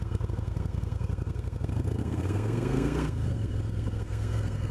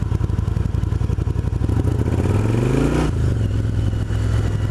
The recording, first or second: second